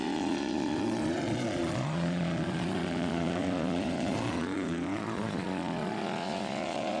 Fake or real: fake